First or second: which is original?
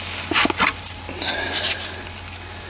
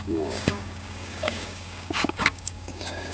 first